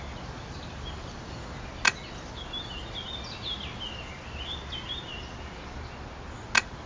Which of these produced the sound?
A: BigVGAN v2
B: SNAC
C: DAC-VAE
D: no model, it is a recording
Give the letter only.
D